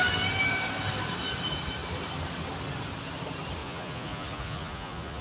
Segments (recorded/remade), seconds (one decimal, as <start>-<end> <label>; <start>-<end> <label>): 0.0-3.6 recorded; 3.6-5.2 remade